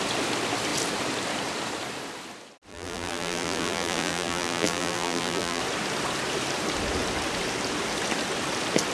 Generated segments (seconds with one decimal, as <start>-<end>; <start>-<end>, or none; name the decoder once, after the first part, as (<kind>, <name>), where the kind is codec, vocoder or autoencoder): 2.7-5.6 (vocoder, BigVGAN v2)